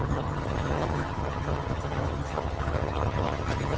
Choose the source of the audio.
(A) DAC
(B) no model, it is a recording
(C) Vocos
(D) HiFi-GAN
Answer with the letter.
D